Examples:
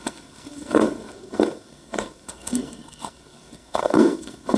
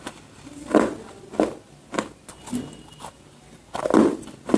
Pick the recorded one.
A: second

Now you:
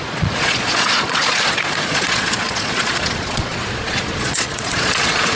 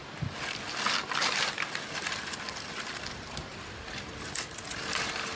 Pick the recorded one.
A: second